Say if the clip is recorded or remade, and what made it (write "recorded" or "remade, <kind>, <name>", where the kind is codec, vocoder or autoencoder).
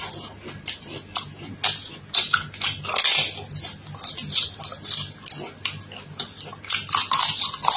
recorded